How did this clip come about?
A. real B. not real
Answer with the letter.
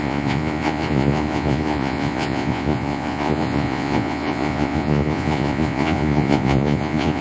B